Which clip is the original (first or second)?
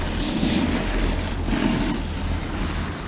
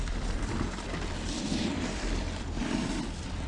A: first